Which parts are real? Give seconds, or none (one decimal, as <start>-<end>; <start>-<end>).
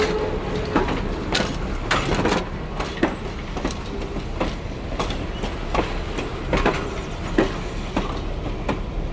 0.0-9.1